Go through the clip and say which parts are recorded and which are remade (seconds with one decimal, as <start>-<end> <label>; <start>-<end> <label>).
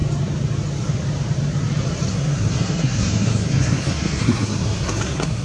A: 0.0-2.1 recorded; 2.1-5.4 remade